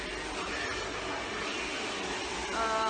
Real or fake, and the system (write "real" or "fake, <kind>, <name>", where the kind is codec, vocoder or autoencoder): real